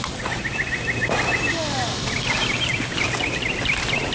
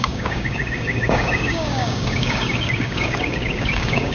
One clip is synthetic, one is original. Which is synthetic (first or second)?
second